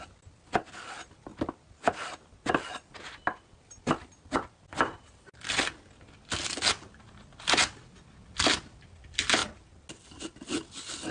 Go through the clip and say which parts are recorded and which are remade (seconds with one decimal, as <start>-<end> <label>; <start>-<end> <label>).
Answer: 0.0-11.1 recorded